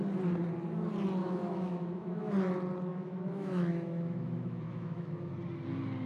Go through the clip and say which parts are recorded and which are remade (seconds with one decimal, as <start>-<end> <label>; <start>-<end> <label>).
0.0-1.2 recorded; 1.2-2.3 remade; 2.3-2.9 recorded; 2.9-5.3 remade; 5.3-6.1 recorded